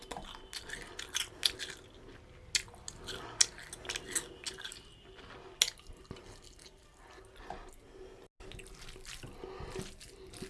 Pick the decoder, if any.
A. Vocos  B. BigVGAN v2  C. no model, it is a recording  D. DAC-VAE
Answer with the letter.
C